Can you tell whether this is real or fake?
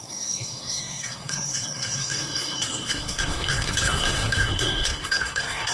fake